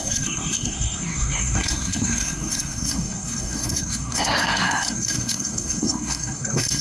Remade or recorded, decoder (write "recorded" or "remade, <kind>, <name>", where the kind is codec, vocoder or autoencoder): remade, codec, SNAC